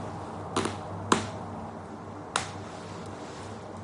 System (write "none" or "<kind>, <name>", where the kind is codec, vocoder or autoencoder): none